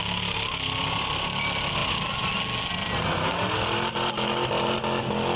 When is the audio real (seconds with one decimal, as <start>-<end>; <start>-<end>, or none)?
0.0-5.4